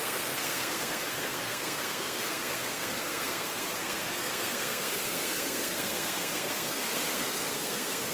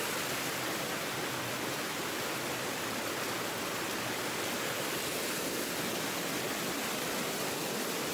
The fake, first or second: first